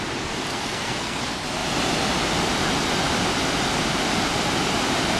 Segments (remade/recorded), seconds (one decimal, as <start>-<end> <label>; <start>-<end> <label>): 0.0-0.5 recorded; 0.5-1.2 remade; 1.2-5.2 recorded